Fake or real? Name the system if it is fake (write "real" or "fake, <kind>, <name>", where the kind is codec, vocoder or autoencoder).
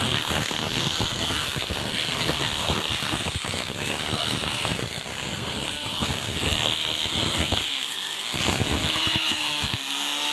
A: fake, codec, SNAC